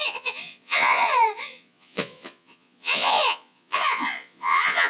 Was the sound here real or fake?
fake